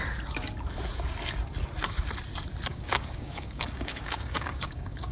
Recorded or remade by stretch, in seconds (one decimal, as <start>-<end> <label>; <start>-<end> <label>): 0.0-2.7 recorded; 2.7-5.1 remade